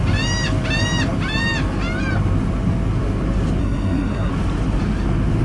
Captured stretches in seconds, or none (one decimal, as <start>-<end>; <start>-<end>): 0.0-3.6; 4.3-5.4